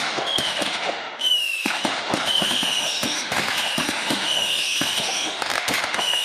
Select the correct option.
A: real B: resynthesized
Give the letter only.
B